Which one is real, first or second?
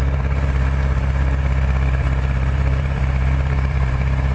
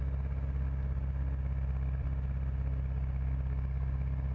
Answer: second